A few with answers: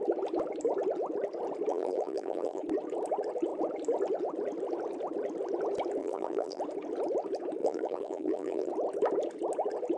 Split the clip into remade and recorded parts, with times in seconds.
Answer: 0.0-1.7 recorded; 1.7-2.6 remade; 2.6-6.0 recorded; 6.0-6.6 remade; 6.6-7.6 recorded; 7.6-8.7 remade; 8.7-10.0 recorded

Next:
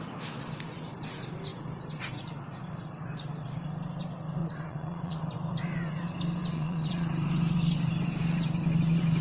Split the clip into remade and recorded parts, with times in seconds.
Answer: 0.0-4.4 recorded; 4.4-5.2 remade; 5.2-6.5 recorded; 6.5-7.1 remade; 7.1-9.2 recorded

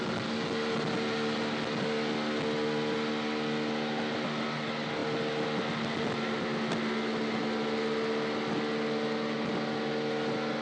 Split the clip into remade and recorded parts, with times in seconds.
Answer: 0.0-10.6 recorded

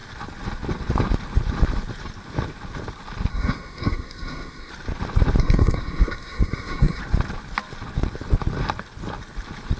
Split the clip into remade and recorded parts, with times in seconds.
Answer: 0.0-3.3 recorded; 3.3-4.7 remade; 4.7-5.4 recorded; 5.4-7.0 remade; 7.0-9.8 recorded

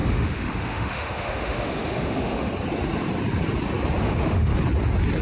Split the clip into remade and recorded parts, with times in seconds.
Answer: 0.0-2.5 remade; 2.5-4.0 recorded; 4.0-4.5 remade; 4.5-5.2 recorded